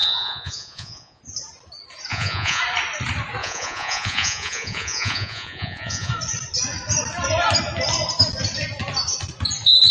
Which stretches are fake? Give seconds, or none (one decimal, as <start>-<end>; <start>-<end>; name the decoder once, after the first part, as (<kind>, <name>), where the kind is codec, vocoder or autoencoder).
0.0-1.2 (vocoder, Vocos); 2.1-2.6; 3.4-6.1